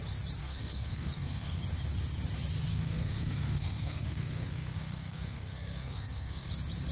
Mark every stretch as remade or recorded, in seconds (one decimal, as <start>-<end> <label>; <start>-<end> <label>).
0.0-0.4 recorded; 0.4-1.6 remade; 1.6-2.7 recorded; 2.7-6.5 remade; 6.5-6.9 recorded